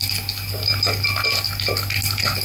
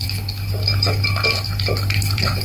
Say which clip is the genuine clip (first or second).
first